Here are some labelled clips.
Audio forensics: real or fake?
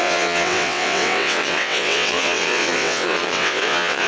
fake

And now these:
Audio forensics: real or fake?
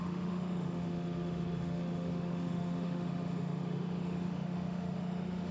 fake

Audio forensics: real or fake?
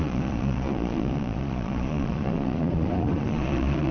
fake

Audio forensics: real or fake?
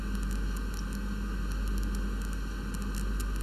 real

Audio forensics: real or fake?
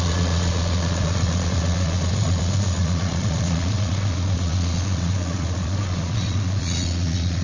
fake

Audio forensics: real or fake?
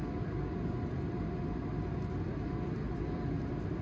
real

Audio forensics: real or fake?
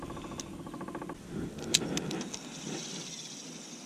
real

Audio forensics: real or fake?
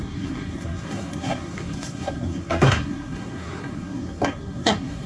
fake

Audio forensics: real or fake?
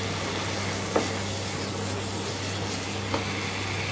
real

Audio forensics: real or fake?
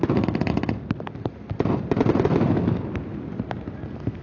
real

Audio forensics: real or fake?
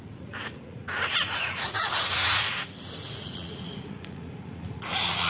fake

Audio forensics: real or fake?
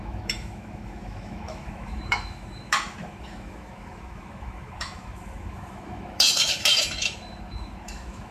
fake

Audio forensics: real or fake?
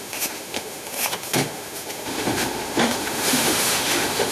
fake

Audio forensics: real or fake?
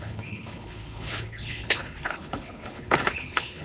fake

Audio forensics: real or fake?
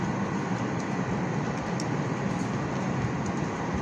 real